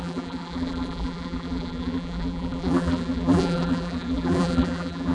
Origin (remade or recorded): remade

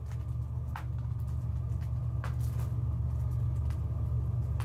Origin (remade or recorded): recorded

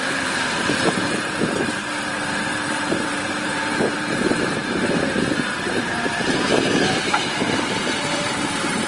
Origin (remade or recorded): remade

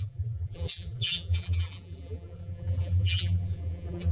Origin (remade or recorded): remade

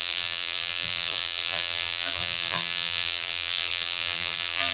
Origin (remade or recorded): remade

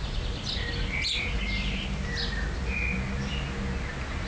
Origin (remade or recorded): recorded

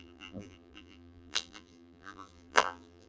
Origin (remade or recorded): remade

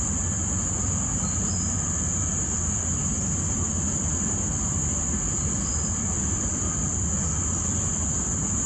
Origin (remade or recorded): recorded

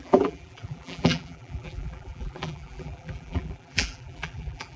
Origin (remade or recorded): remade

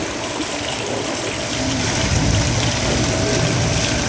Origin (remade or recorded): recorded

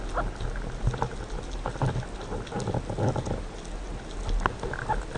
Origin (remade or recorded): recorded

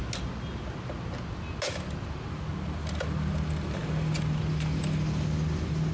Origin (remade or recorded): recorded